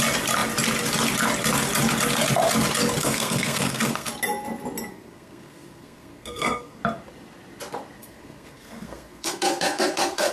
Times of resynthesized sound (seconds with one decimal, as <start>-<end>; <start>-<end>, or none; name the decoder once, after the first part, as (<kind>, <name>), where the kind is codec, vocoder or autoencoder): 3.0-4.1 (codec, SNAC); 4.9-6.8; 8.0-10.3